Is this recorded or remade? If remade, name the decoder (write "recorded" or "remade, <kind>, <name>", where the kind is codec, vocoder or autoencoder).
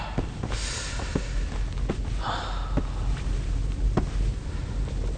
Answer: recorded